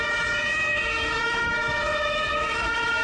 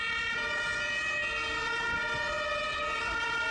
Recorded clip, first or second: second